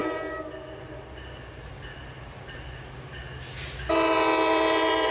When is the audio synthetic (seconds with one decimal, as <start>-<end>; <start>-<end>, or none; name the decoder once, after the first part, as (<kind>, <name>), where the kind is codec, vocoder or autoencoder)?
none